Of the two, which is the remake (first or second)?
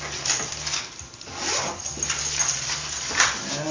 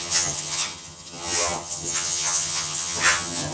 second